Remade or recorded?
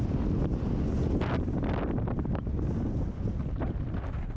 recorded